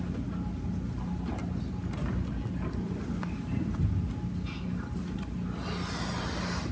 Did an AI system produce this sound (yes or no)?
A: no